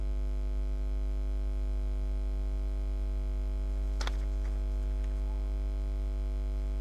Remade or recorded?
recorded